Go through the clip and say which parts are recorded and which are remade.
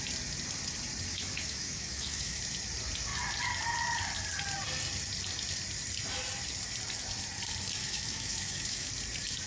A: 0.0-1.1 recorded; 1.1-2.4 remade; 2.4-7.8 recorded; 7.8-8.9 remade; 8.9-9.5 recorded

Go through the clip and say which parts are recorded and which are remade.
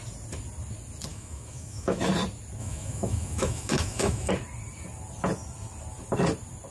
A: 0.0-1.1 recorded; 1.1-2.1 remade; 2.1-2.6 recorded; 2.6-4.3 remade; 4.3-6.7 recorded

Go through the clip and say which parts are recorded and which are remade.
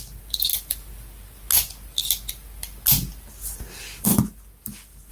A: 0.0-5.1 recorded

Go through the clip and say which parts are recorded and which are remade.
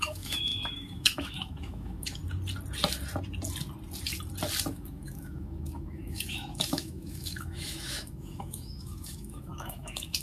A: 0.0-2.2 remade; 2.2-4.7 recorded; 4.7-10.2 remade